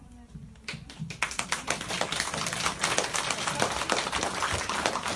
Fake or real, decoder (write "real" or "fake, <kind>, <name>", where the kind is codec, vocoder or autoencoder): real